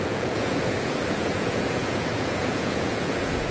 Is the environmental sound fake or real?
fake